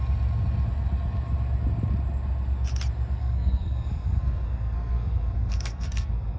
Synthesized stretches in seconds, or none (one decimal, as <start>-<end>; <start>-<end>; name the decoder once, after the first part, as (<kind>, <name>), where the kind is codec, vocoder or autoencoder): 3.2-6.4 (codec, SNAC)